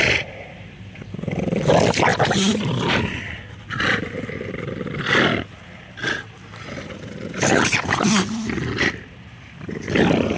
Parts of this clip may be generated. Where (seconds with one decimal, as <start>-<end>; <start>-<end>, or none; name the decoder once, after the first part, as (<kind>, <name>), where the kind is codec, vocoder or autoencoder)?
none